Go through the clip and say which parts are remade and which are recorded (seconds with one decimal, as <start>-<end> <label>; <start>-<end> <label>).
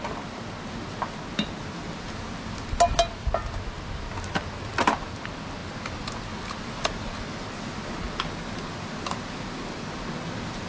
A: 0.0-10.7 recorded